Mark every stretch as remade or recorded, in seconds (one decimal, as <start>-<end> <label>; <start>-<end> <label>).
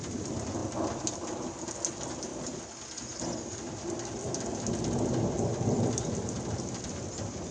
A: 0.0-7.5 recorded